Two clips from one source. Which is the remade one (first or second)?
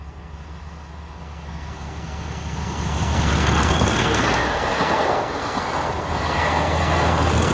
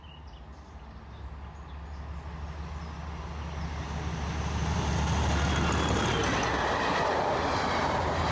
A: first